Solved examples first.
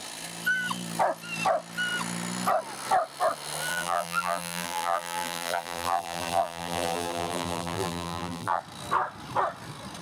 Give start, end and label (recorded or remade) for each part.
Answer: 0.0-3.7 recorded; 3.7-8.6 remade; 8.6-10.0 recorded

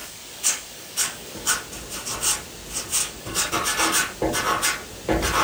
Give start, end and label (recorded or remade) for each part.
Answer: 0.0-1.5 remade; 1.5-3.0 recorded; 3.0-3.5 remade; 3.5-5.4 recorded